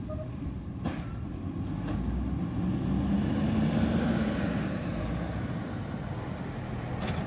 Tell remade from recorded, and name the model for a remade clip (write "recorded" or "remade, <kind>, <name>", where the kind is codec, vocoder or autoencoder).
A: recorded